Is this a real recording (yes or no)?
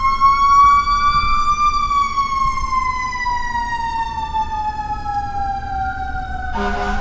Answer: yes